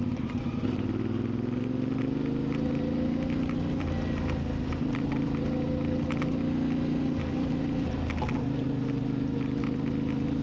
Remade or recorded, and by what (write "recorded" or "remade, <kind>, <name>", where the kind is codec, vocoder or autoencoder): recorded